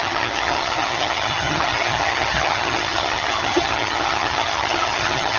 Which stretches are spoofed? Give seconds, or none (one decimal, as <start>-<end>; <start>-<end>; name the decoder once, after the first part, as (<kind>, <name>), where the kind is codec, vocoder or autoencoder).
0.0-5.4 (vocoder, HiFi-GAN)